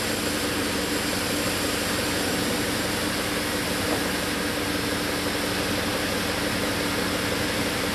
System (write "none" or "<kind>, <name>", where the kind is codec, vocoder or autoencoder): none